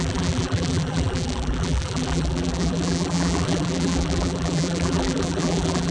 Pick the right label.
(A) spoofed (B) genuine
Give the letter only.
A